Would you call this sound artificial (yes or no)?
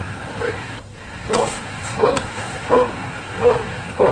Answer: yes